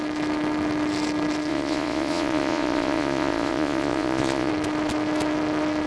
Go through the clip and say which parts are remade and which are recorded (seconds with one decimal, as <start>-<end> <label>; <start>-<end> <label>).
0.0-1.5 recorded; 1.5-4.5 remade; 4.5-5.9 recorded